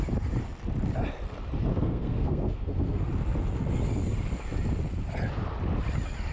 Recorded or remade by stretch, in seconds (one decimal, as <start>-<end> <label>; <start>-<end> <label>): 0.0-1.7 recorded; 1.7-3.1 remade; 3.1-6.3 recorded